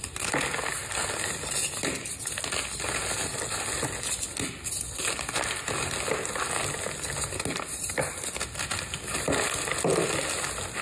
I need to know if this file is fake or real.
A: real